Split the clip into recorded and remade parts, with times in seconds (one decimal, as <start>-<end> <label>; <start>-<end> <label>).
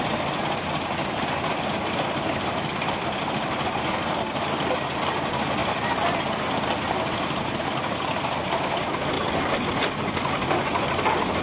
0.0-11.4 recorded